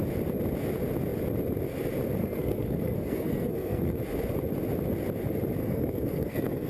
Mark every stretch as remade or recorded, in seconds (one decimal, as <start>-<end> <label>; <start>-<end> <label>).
0.0-2.2 recorded; 2.2-4.0 remade; 4.0-5.6 recorded; 5.6-6.7 remade